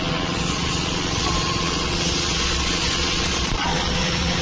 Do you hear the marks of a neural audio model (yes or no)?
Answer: yes